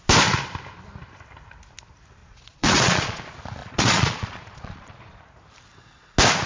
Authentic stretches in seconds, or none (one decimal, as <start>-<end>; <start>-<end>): 0.0-2.2; 3.2-3.6; 5.2-6.5